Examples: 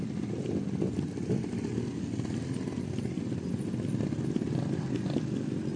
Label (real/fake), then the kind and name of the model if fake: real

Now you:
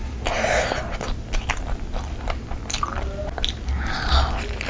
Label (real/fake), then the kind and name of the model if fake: real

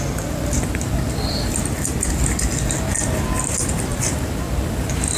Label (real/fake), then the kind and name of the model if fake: real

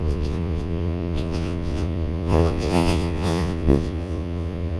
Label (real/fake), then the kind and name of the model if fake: fake, vocoder, Vocos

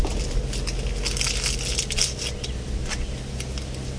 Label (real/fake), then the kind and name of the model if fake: real